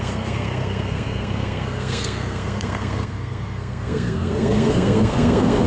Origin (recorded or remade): remade